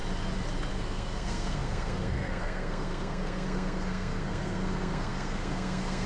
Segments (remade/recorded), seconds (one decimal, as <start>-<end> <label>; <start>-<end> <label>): 0.0-0.7 recorded; 0.7-6.1 remade